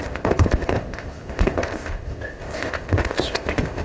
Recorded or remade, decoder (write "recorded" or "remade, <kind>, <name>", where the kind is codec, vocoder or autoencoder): remade, codec, ZipCodec